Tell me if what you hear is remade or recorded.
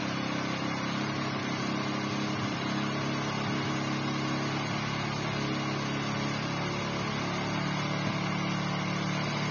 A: recorded